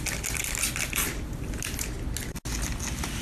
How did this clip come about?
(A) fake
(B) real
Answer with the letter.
B